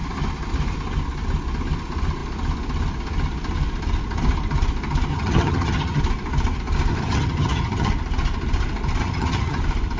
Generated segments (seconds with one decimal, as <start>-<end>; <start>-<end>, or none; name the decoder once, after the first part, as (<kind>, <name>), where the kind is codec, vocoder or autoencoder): 5.1-6.0 (vocoder, HiFi-GAN); 6.9-7.9; 9.0-9.6